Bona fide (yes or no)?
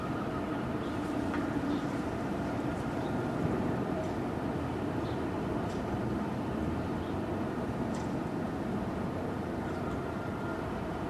yes